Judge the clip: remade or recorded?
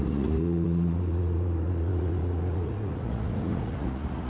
remade